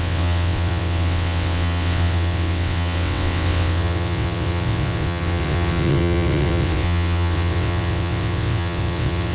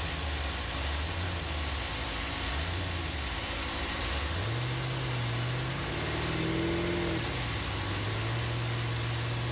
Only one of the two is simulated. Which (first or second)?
first